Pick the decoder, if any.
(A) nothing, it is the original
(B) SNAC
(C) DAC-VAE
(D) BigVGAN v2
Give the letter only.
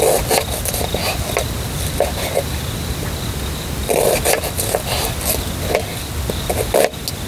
A